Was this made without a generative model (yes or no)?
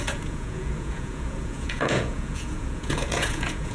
no